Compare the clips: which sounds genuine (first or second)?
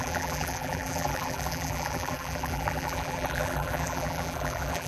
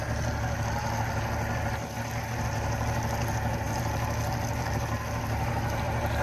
second